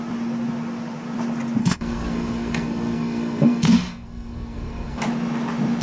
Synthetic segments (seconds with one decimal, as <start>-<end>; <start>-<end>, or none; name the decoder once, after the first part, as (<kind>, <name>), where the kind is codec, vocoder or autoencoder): 1.6-5.0 (codec, SNAC)